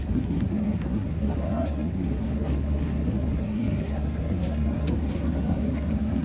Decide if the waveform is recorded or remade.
remade